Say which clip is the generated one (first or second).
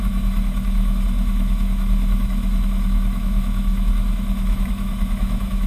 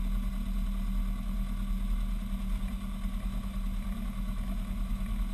first